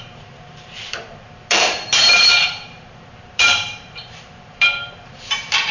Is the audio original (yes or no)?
no